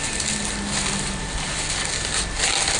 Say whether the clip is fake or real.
real